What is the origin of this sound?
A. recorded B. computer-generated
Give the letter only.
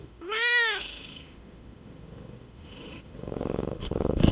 B